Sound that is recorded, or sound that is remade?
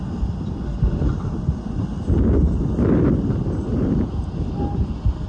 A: recorded